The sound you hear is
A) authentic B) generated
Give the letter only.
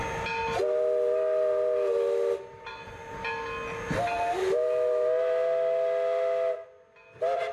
A